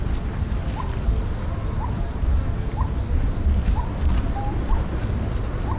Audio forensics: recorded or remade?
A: recorded